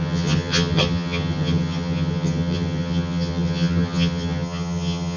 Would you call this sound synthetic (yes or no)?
yes